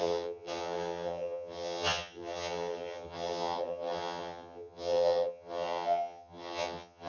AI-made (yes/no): yes